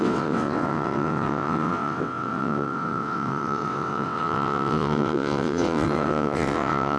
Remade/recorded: remade